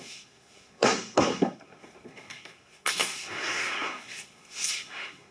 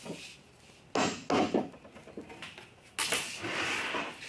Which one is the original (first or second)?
second